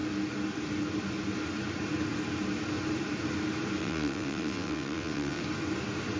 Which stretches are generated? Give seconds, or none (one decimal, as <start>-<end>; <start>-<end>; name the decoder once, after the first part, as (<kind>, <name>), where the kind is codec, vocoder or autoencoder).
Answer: 3.8-5.4 (vocoder, WaveNeXt)